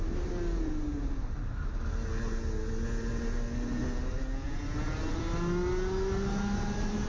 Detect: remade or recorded recorded